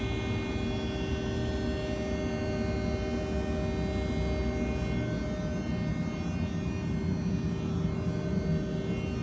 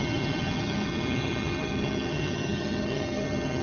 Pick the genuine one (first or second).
first